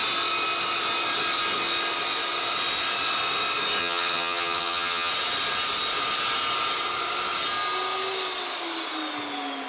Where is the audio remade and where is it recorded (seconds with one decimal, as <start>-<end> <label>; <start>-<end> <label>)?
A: 0.0-3.8 recorded; 3.8-5.1 remade; 5.1-9.7 recorded